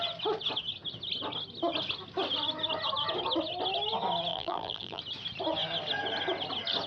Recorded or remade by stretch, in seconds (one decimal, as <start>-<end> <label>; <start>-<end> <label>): 0.0-4.3 recorded; 4.3-5.0 remade; 5.0-6.9 recorded